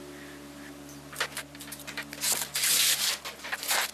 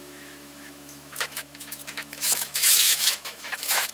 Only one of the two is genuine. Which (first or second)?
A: first